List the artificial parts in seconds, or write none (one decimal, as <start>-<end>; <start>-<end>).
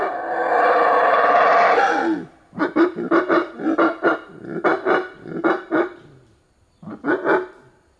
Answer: none